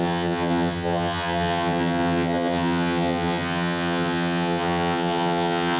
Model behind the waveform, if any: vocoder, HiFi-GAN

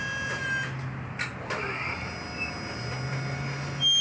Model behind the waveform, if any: none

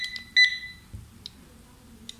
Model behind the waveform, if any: none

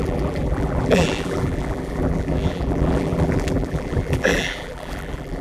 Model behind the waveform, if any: vocoder, BigVGAN v2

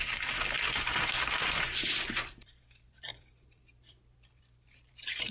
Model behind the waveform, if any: vocoder, BigVGAN v2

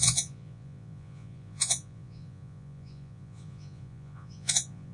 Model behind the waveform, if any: vocoder, Vocos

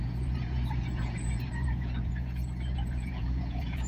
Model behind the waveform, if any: vocoder, Vocos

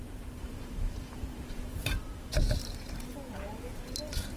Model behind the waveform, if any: vocoder, BigVGAN v2